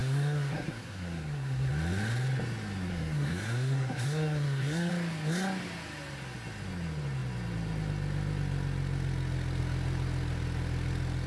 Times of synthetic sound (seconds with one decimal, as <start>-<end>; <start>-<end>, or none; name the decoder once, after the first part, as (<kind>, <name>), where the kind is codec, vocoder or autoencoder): 0.0-1.7 (codec, SNAC); 2.9-4.9